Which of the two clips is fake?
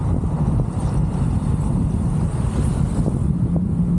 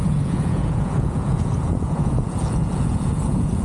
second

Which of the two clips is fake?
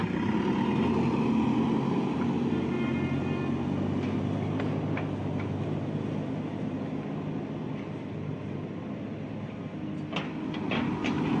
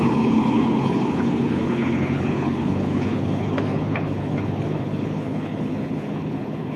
second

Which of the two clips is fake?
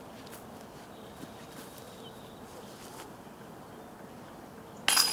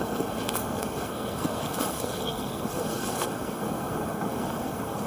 second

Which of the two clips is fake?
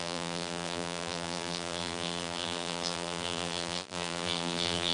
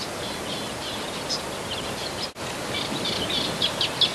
first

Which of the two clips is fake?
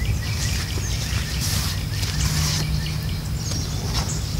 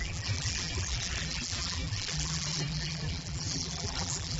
second